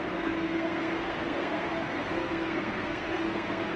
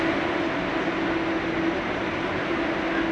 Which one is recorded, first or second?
second